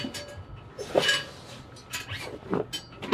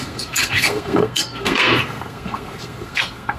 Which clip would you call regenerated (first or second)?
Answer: second